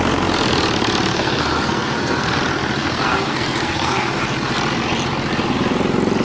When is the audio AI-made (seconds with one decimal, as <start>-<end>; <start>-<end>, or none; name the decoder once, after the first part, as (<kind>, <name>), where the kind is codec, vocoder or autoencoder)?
1.1-2.4 (codec, SNAC); 2.8-4.1

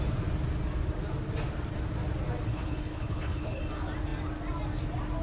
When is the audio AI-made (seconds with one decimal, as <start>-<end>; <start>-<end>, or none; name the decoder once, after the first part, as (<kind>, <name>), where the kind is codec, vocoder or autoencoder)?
2.5-3.6 (codec, HILCodec)

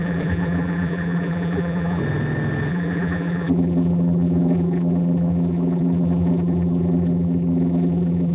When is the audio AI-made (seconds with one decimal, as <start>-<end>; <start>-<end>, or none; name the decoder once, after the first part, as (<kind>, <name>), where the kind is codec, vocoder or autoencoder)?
0.0-2.0 (vocoder, BigVGAN v2); 2.7-8.3

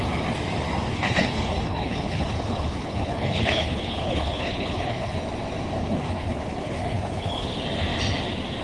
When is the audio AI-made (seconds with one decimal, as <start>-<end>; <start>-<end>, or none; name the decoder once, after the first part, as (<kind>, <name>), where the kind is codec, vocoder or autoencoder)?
0.9-5.2 (codec, HILCodec); 5.8-7.5

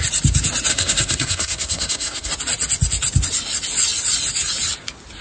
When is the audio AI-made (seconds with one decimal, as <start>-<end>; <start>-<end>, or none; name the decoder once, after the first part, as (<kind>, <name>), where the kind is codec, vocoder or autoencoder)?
0.7-2.3 (codec, SNAC)

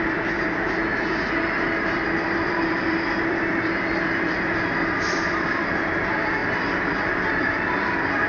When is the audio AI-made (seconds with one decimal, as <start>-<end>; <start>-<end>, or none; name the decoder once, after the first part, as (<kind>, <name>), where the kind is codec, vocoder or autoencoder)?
0.0-0.8 (vocoder, BigVGAN v2); 1.6-8.3

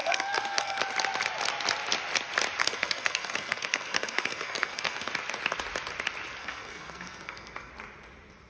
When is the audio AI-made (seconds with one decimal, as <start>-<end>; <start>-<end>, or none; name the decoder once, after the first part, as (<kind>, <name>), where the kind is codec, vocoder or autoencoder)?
0.0-0.8 (codec, SNAC); 2.6-5.1; 6.4-7.7